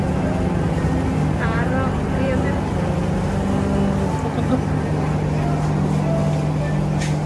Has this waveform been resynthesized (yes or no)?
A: no